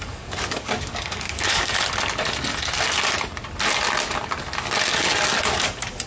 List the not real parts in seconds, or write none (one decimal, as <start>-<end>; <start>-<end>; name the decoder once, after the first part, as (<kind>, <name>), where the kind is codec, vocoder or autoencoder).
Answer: 0.0-1.7 (codec, DAC); 5.4-6.1